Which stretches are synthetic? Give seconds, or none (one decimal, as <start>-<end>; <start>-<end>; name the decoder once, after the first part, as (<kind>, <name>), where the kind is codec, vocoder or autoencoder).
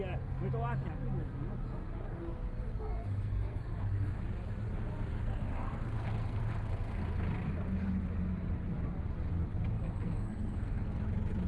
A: 2.1-4.1 (codec, SNAC); 5.1-7.0; 9.4-11.0